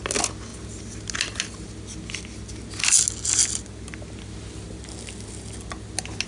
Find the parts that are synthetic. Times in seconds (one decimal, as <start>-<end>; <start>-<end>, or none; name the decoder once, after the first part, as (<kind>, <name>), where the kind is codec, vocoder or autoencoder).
none